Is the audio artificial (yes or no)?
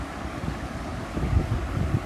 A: yes